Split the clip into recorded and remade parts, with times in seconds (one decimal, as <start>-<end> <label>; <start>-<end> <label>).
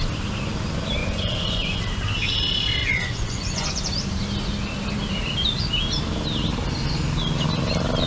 0.0-1.0 recorded; 1.0-1.8 remade; 1.8-2.8 recorded; 2.8-3.7 remade; 3.7-8.1 recorded